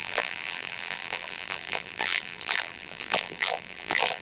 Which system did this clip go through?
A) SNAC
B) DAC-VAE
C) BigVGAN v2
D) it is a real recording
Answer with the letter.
C